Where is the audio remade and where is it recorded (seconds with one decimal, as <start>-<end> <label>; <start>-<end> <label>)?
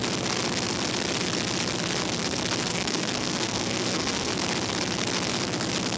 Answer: 0.0-2.7 recorded; 2.7-4.3 remade; 4.3-6.0 recorded